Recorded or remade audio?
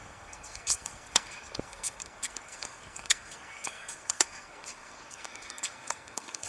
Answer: remade